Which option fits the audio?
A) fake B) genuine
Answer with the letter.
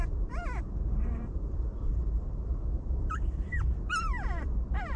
A